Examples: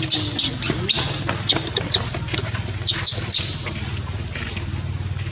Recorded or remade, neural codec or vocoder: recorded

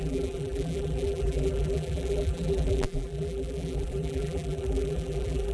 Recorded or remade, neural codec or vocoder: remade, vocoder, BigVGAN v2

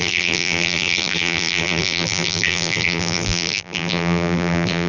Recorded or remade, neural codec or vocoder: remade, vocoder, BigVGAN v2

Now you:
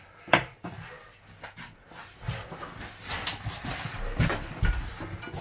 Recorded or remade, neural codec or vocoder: recorded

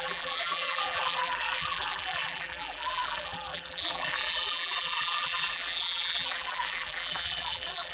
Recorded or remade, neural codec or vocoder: remade, vocoder, BigVGAN v2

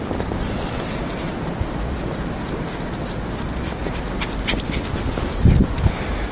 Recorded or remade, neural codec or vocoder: recorded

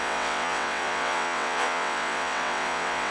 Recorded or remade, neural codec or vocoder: remade, vocoder, WaveNeXt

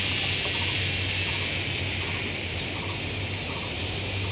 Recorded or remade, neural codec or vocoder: recorded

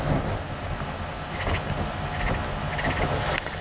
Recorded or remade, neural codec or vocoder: recorded